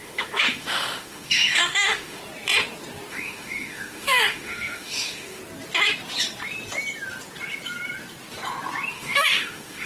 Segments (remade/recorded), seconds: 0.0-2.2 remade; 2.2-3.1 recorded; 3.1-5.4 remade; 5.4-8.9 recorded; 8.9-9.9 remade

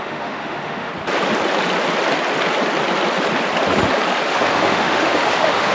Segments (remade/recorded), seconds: 0.0-0.9 remade; 0.9-4.3 recorded; 4.3-5.7 remade

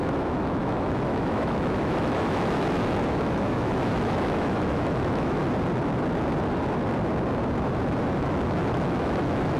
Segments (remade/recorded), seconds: 0.0-5.4 remade; 5.4-8.2 recorded; 8.2-9.6 remade

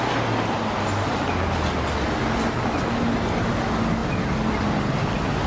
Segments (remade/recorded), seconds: 0.0-5.5 recorded

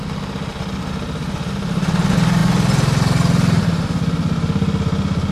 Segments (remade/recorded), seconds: 0.0-5.3 recorded

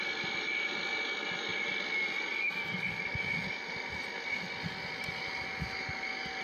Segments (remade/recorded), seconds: 0.0-6.4 recorded